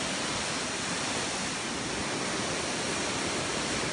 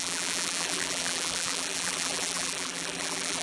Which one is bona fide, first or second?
first